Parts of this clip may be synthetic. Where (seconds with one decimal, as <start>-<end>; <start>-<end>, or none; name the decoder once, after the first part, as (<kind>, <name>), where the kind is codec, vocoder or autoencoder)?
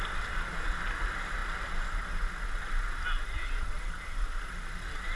none